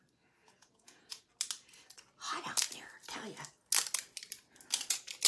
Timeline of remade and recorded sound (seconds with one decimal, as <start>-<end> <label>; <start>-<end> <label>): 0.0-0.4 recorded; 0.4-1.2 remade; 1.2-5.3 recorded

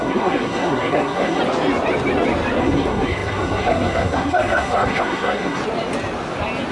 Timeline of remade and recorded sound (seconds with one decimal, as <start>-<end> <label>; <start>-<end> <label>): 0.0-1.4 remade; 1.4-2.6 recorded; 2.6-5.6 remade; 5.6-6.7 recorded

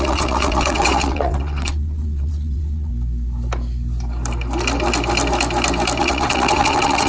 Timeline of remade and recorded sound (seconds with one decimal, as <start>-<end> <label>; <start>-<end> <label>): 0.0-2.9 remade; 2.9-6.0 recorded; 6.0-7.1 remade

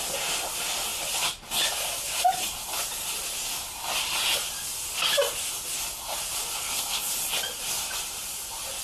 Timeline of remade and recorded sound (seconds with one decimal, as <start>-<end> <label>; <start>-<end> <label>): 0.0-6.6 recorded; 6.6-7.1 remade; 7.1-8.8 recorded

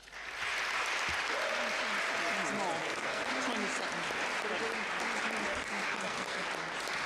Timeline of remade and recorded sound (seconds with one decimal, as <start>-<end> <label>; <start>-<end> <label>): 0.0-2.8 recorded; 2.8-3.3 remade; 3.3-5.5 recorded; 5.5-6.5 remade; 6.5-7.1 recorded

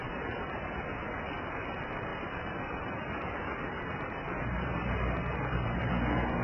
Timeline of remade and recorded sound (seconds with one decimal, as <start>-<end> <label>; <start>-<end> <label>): 0.0-0.8 remade; 0.8-2.1 recorded; 2.1-5.9 remade; 5.9-6.4 recorded

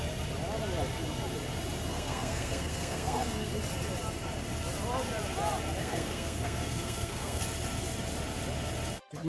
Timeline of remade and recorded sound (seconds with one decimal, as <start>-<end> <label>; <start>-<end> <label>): 0.0-1.9 recorded; 1.9-3.5 remade; 3.5-5.8 recorded; 5.8-7.4 remade; 7.4-9.3 recorded

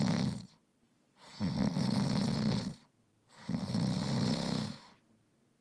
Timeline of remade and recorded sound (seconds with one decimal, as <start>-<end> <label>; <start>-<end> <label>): 0.0-5.6 recorded